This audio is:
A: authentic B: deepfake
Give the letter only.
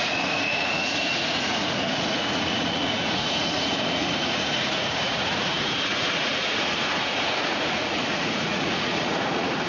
B